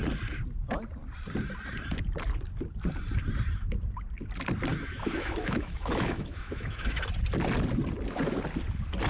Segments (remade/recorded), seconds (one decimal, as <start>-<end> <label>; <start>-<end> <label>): 0.0-4.7 recorded; 4.7-7.0 remade; 7.0-9.1 recorded